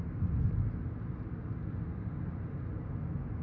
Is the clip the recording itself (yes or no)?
yes